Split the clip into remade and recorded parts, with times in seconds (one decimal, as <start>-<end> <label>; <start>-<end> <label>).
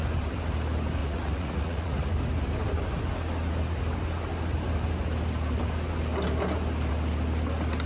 0.0-1.0 recorded; 1.0-2.1 remade; 2.1-7.9 recorded